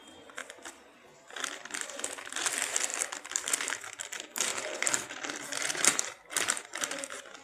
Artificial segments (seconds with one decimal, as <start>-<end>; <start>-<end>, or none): 2.9-3.5; 4.5-5.4